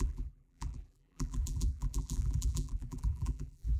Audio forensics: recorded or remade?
remade